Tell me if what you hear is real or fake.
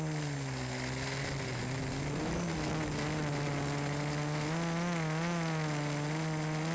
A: real